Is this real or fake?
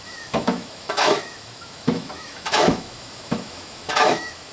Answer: fake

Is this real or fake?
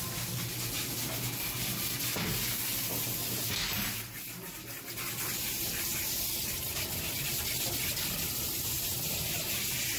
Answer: real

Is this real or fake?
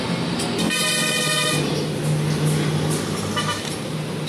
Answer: real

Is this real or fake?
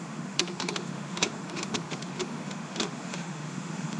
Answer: fake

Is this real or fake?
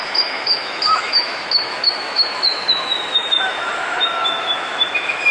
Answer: fake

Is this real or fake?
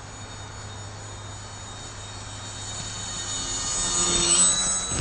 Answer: real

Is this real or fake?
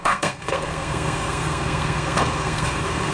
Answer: fake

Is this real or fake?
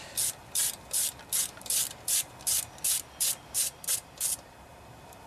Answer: fake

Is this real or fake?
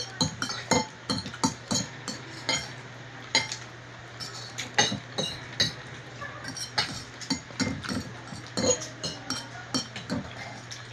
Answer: real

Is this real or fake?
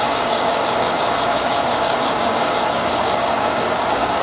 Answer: fake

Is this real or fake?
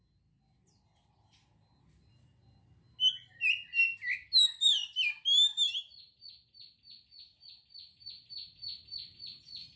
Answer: real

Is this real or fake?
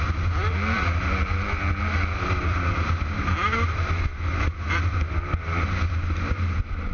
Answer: real